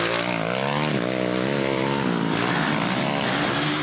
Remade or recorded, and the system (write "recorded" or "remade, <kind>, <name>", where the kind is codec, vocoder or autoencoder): recorded